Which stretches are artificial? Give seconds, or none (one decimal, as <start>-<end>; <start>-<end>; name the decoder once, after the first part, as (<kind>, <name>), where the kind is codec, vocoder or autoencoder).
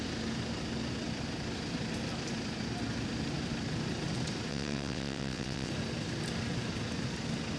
4.5-5.7 (vocoder, WaveNeXt)